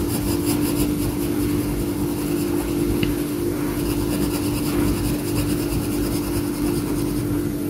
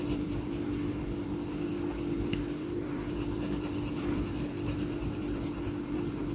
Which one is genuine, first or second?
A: first